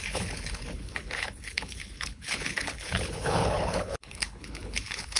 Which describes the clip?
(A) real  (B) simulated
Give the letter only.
B